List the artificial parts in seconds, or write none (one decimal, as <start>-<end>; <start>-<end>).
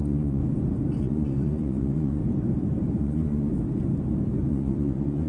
0.0-0.4; 1.0-2.2; 3.0-3.5; 4.5-5.3